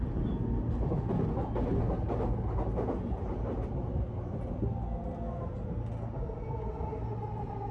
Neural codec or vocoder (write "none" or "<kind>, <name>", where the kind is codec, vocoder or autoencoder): none